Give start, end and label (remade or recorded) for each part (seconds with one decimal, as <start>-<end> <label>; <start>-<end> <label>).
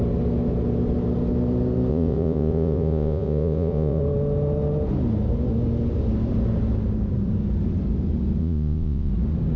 0.0-1.9 recorded; 1.9-4.0 remade; 4.0-8.4 recorded; 8.4-9.1 remade; 9.1-9.6 recorded